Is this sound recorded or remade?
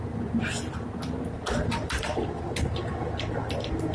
recorded